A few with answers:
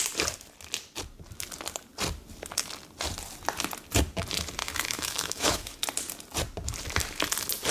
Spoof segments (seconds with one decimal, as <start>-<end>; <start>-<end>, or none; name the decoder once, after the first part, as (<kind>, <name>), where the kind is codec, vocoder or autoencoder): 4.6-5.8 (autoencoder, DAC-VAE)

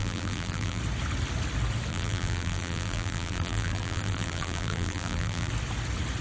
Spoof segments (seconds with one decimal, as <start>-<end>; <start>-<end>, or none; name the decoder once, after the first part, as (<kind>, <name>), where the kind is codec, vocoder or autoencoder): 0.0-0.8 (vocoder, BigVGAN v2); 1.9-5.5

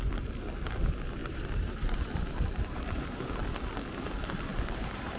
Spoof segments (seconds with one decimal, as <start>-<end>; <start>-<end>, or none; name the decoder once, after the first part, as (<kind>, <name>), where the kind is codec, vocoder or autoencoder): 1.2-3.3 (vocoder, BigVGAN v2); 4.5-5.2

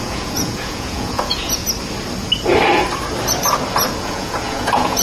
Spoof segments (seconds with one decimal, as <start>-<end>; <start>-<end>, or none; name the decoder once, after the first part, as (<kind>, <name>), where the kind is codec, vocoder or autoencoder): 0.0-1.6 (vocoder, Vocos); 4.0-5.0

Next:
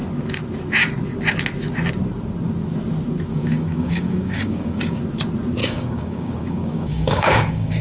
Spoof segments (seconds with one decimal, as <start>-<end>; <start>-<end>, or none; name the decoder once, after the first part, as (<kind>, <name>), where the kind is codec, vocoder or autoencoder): 3.3-5.0 (codec, DAC); 5.6-7.8

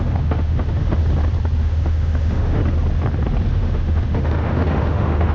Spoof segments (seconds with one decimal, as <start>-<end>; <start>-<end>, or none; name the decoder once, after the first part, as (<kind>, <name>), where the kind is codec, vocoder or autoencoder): 0.0-1.0 (autoencoder, DAC-VAE); 1.6-2.6; 3.5-5.3

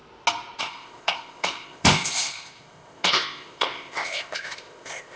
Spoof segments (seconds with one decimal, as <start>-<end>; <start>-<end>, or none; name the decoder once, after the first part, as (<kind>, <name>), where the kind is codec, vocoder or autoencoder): 0.6-5.2 (codec, ZipCodec)

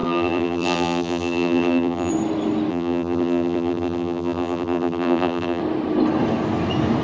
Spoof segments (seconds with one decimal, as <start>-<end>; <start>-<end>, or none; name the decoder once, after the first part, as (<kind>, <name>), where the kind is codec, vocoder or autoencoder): 0.0-2.1 (vocoder, BigVGAN v2); 2.7-5.6